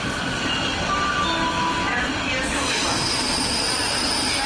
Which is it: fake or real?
real